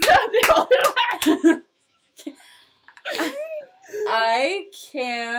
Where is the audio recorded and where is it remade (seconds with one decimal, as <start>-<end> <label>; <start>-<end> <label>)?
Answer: 0.0-0.8 recorded; 0.8-3.6 remade; 3.6-4.2 recorded; 4.2-5.4 remade